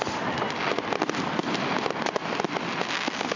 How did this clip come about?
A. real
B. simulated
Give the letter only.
A